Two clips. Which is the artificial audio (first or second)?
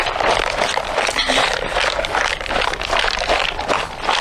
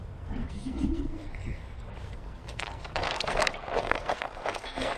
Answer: second